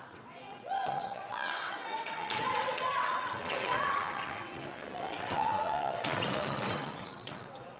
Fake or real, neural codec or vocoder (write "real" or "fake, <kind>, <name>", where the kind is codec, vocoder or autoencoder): fake, vocoder, WaveNeXt